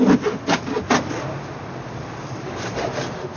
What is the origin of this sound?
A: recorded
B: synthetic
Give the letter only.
A